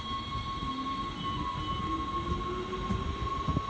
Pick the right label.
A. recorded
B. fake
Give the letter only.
A